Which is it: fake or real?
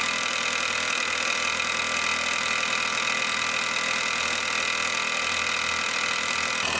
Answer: real